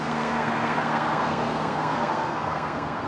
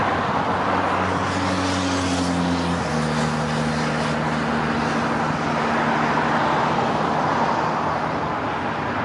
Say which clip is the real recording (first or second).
second